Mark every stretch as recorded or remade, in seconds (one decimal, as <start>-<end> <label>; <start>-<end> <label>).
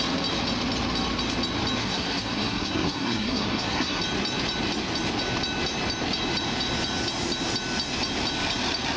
0.0-1.8 recorded; 1.8-4.0 remade; 4.0-9.0 recorded